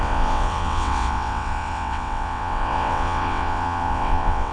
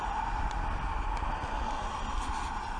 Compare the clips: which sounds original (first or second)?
second